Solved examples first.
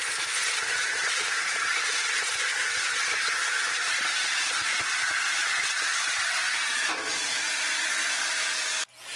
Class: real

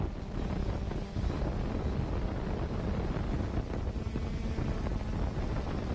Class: real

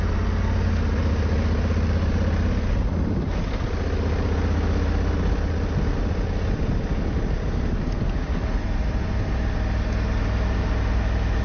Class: real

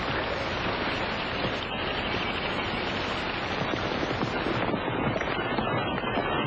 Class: real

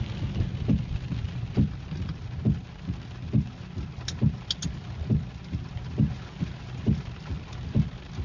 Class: real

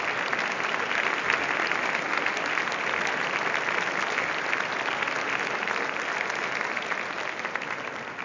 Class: real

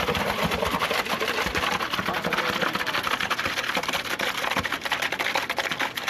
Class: real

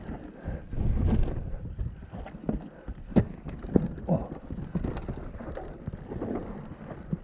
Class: real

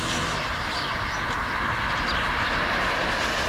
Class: real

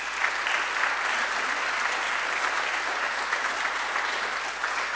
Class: real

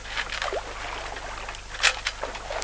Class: real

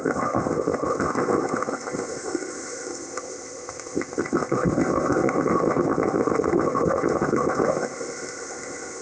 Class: fake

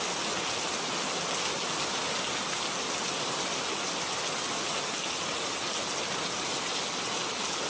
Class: real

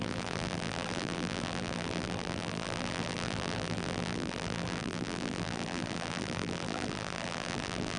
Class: fake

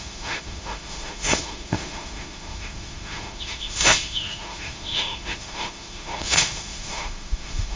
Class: fake